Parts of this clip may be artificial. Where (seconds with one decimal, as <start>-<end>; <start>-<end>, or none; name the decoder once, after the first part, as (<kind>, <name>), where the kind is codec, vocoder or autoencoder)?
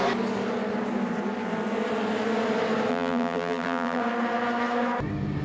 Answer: 2.9-4.0 (vocoder, BigVGAN v2)